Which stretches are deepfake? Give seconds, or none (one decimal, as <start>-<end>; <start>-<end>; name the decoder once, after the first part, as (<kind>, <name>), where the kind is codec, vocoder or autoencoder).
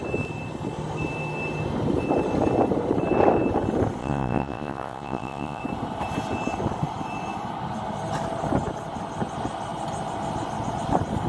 4.0-5.6 (vocoder, Vocos)